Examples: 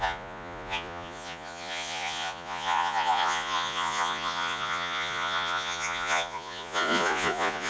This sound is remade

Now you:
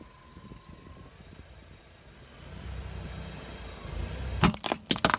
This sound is recorded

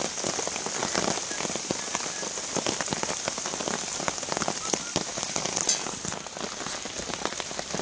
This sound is recorded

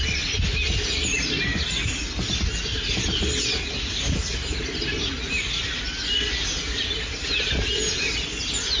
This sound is recorded